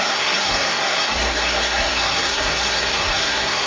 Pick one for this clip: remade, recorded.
remade